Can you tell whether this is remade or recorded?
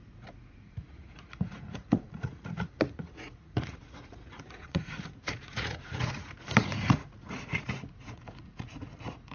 remade